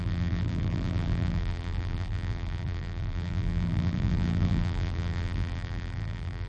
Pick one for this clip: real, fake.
fake